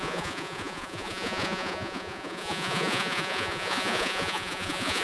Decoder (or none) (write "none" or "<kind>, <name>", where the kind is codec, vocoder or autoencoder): vocoder, Vocos